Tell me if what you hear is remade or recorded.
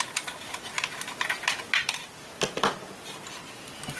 recorded